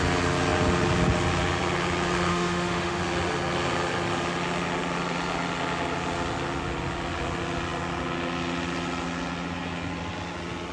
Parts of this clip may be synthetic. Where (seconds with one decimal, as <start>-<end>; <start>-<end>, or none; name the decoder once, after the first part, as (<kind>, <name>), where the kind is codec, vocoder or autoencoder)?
2.3-3.0 (autoencoder, DAC-VAE)